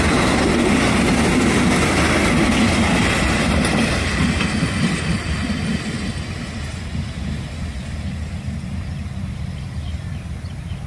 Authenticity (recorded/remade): recorded